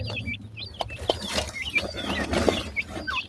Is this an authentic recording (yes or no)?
yes